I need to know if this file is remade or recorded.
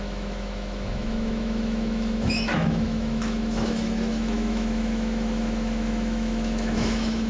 remade